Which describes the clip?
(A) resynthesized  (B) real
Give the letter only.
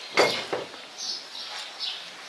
B